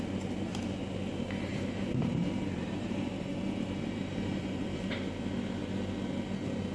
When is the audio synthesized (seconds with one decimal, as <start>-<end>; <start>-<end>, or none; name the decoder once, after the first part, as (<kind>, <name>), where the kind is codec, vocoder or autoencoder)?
1.5-4.9 (vocoder, BigVGAN v2)